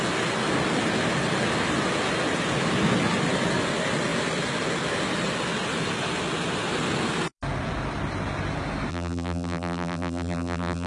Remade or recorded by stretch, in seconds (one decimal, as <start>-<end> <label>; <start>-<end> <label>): 0.0-8.9 recorded; 8.9-10.9 remade